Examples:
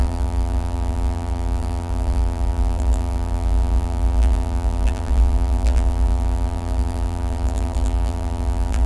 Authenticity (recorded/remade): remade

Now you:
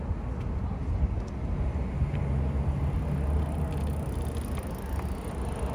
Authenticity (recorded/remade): recorded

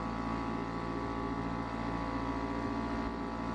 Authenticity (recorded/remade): recorded